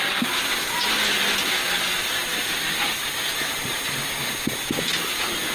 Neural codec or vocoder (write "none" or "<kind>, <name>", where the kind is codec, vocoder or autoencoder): none